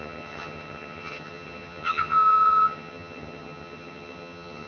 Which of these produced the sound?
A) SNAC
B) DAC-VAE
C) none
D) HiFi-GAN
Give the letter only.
D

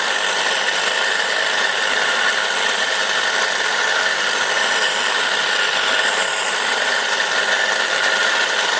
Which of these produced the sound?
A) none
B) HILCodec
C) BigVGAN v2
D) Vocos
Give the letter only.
A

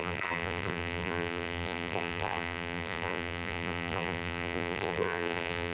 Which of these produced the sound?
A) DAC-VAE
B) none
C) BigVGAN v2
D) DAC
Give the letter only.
C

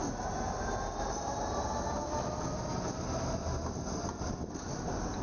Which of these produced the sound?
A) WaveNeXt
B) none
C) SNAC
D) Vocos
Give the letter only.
B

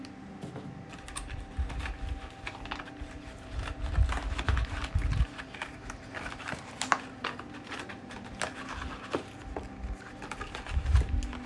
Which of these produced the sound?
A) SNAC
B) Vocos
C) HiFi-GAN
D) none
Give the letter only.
D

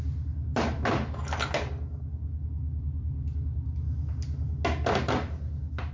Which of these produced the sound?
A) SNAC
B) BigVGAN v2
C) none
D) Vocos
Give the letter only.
C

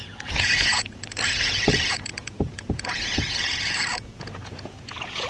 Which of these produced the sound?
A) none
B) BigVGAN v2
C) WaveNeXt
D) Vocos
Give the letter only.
D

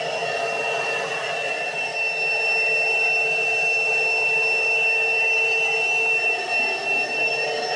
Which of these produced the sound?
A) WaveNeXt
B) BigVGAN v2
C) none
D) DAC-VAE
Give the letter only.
C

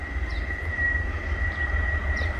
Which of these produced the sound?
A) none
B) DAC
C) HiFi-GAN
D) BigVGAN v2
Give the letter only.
D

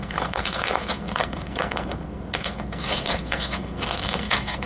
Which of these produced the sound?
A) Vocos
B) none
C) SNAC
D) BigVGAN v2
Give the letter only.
C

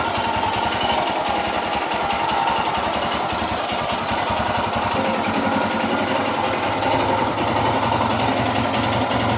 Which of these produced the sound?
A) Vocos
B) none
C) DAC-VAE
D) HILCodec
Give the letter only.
B